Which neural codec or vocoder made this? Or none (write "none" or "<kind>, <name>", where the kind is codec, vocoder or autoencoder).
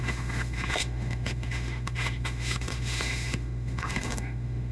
autoencoder, DAC-VAE